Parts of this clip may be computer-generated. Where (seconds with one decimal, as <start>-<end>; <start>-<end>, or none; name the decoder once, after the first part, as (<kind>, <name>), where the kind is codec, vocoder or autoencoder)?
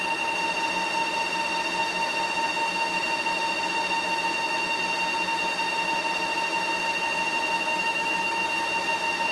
7.7-8.5 (autoencoder, DAC-VAE)